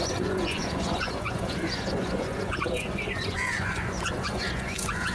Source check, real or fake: fake